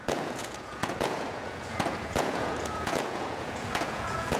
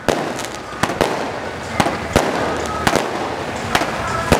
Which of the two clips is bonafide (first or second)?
second